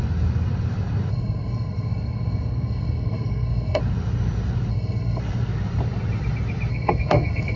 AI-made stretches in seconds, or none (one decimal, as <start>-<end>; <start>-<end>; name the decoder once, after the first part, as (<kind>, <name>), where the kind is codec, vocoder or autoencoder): 1.1-3.8 (codec, SNAC); 4.7-5.2; 6.7-7.6